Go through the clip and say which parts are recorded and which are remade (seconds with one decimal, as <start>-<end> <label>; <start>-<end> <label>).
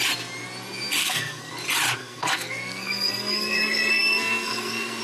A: 0.0-1.0 recorded; 1.0-1.5 remade; 1.5-2.0 recorded; 2.0-5.0 remade